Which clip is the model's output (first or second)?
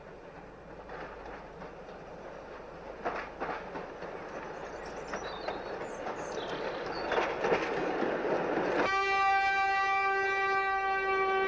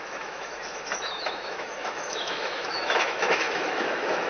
second